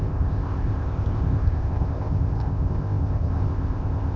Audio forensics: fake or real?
fake